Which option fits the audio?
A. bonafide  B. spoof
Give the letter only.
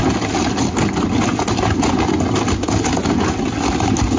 A